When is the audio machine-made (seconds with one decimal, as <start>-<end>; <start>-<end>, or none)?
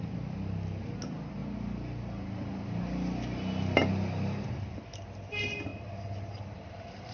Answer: 1.4-4.8; 5.7-7.1